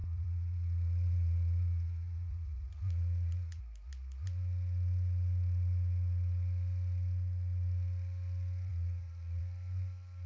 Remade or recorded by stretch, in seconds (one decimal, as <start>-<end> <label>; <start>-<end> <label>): 0.0-3.6 remade; 3.6-8.7 recorded; 8.7-9.4 remade; 9.4-10.3 recorded